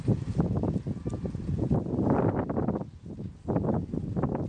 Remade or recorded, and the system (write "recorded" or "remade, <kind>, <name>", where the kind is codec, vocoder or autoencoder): recorded